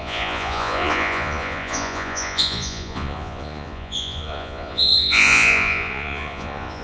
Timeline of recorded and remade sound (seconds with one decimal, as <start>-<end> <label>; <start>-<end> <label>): 0.0-6.8 remade